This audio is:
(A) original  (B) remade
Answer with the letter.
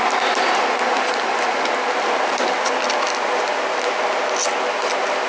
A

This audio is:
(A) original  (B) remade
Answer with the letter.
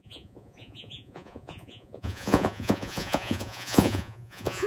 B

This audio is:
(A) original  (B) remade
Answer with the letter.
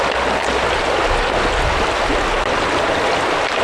A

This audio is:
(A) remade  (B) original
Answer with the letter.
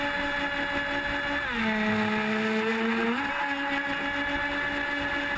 B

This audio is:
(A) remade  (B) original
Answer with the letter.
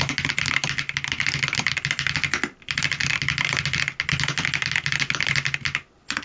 B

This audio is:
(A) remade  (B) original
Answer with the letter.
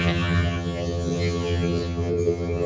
A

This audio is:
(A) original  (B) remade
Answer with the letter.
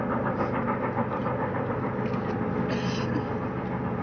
A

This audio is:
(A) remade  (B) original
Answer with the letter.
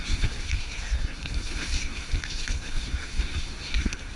A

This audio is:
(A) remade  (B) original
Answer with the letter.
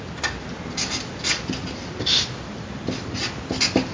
B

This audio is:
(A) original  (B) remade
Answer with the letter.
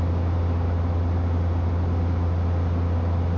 A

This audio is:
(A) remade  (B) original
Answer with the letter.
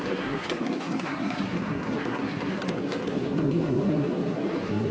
A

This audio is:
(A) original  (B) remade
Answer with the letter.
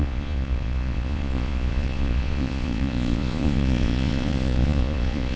B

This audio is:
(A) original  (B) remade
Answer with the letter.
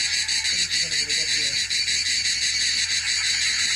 A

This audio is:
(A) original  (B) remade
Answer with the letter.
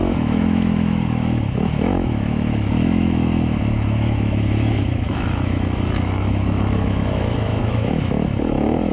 B